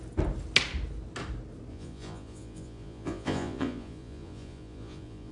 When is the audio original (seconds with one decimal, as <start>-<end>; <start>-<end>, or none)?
0.0-1.7